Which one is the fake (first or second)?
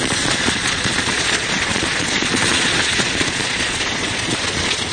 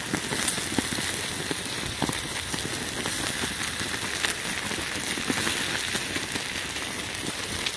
first